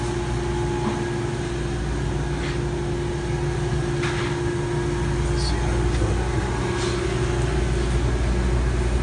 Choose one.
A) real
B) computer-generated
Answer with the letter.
A